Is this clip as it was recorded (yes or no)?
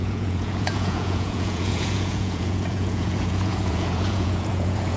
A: no